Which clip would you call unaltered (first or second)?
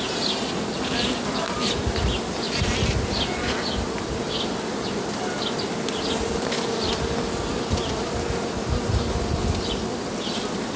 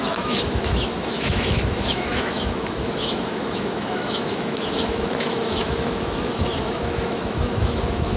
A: first